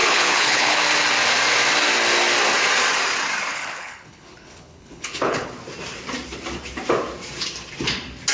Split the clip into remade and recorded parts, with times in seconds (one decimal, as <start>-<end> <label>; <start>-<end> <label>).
0.0-0.8 remade; 0.8-3.5 recorded; 3.5-5.5 remade; 5.5-8.3 recorded